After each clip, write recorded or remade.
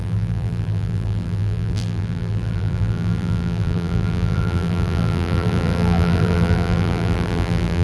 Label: remade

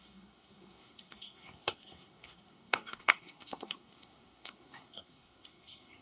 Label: remade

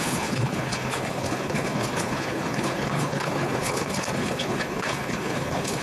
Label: remade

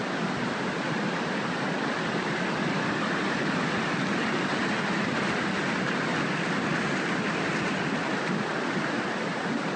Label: recorded